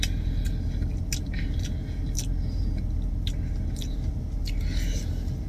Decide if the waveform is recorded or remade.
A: recorded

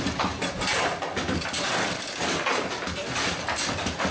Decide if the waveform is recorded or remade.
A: recorded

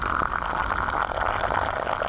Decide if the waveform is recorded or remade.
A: recorded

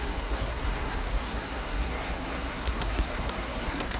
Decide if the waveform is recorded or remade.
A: remade